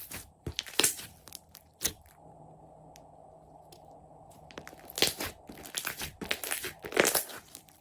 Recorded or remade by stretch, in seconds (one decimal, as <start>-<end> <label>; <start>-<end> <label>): 0.0-2.4 remade; 2.4-7.8 recorded